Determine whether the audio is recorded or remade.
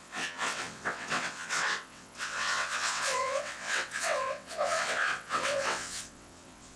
remade